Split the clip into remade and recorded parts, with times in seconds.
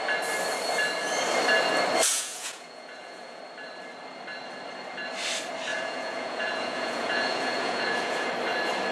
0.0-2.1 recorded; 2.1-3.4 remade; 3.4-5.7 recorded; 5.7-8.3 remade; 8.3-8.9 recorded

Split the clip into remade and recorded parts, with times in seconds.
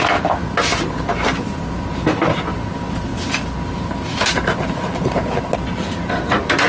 0.0-0.7 recorded; 0.7-1.8 remade; 1.8-6.7 recorded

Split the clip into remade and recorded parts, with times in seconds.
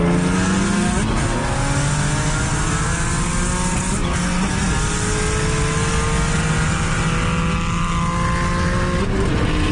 0.0-9.7 recorded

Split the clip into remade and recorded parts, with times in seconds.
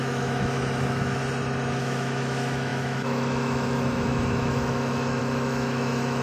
0.0-1.2 remade; 1.2-1.8 recorded; 1.8-6.2 remade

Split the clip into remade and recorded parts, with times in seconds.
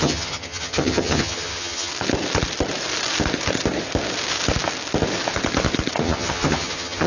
0.0-1.9 remade; 1.9-6.0 recorded; 6.0-7.1 remade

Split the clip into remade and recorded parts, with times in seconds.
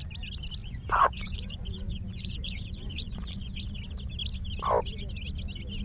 0.0-0.6 recorded; 0.6-3.6 remade; 3.6-5.8 recorded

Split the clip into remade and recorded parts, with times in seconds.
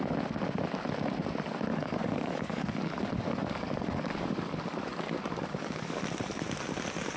0.0-1.7 recorded; 1.7-6.0 remade; 6.0-7.2 recorded